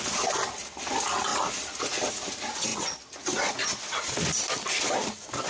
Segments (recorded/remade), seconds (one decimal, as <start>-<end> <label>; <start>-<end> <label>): 0.0-5.5 recorded